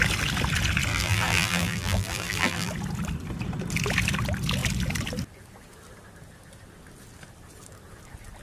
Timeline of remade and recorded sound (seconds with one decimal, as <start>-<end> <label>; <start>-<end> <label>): 0.0-0.9 recorded; 0.9-2.7 remade; 2.7-8.4 recorded